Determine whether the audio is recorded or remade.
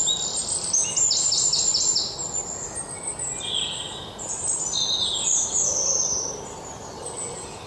recorded